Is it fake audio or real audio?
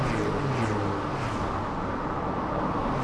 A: real